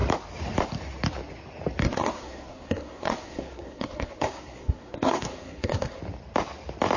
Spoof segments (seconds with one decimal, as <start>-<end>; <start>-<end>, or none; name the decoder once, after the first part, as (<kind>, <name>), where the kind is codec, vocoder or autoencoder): 1.8-6.0 (codec, SNAC)